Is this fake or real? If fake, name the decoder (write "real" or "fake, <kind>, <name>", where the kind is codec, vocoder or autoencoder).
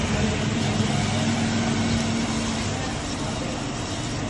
real